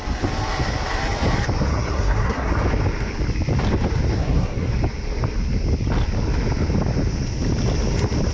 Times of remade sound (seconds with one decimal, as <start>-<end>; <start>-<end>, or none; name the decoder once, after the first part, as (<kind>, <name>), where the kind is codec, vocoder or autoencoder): 1.7-2.5 (codec, SNAC); 4.1-4.7